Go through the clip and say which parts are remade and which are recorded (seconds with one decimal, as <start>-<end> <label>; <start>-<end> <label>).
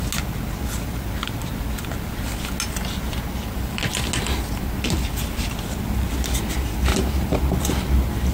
0.0-6.9 recorded; 6.9-7.4 remade; 7.4-8.3 recorded